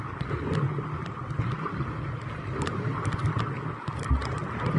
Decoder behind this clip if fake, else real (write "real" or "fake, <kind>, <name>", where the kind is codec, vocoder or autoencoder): real